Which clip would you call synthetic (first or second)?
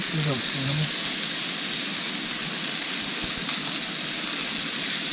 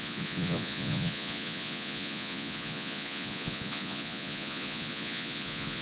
second